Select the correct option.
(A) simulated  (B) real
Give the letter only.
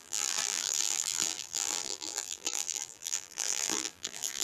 A